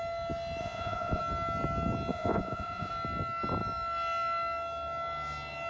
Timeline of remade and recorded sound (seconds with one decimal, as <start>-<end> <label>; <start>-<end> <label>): 0.0-0.6 recorded; 0.6-1.2 remade; 1.2-2.1 recorded; 2.1-2.9 remade; 2.9-5.7 recorded